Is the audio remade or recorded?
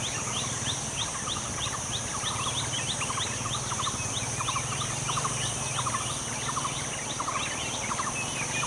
recorded